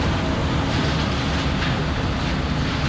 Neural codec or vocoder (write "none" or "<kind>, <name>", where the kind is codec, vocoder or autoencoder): none